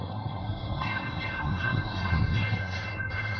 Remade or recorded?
remade